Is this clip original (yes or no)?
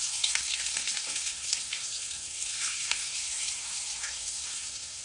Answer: no